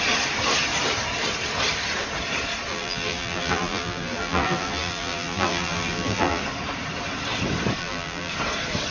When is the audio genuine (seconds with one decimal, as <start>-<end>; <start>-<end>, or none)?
0.0-2.7; 6.4-7.8; 8.3-8.9